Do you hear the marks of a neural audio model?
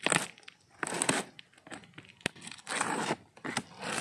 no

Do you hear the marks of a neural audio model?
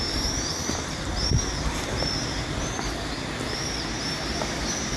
no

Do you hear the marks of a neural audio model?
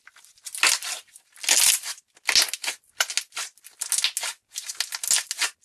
no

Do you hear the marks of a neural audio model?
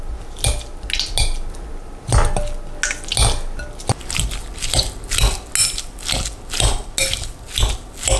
no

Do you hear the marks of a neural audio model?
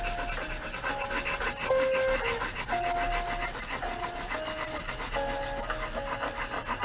no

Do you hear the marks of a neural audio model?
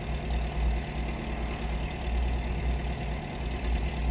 no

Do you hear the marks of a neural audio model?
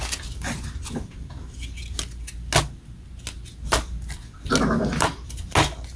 no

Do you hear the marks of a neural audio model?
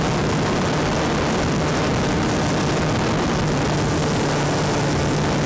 no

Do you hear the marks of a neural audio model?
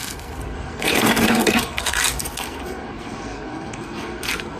yes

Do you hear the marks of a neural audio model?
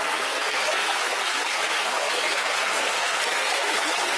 yes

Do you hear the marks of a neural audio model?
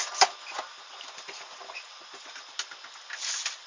no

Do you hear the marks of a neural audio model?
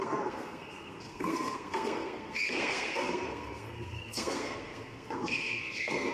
yes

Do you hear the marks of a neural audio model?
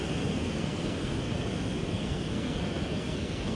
yes